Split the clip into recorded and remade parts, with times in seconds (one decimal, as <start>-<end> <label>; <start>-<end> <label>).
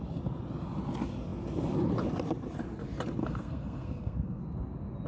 0.0-3.2 recorded; 3.2-4.4 remade; 4.4-5.1 recorded